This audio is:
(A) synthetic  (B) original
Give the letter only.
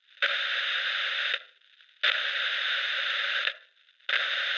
B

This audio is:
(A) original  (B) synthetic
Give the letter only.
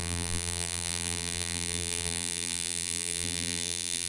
B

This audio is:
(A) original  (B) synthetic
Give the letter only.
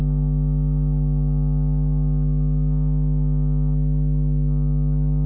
A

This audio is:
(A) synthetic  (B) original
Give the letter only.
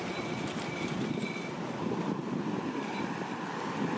B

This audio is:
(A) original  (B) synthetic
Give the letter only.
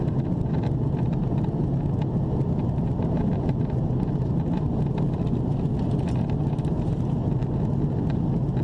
A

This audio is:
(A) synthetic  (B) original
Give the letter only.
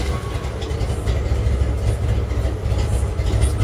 B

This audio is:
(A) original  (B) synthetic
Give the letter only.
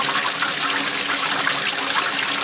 A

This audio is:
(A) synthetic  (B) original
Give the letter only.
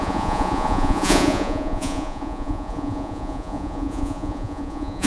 A